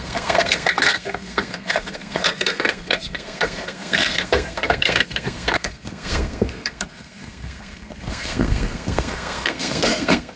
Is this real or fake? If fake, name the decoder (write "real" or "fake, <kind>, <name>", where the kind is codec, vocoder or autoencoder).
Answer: fake, codec, SNAC